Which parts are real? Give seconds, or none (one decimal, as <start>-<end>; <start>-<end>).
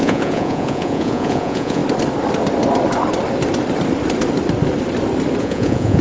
1.8-5.4